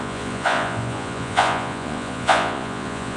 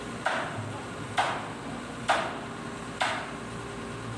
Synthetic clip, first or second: first